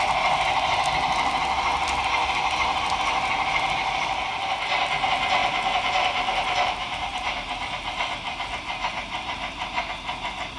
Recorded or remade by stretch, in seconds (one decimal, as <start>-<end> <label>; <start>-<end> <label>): 0.0-5.4 recorded; 5.4-9.8 remade; 9.8-10.6 recorded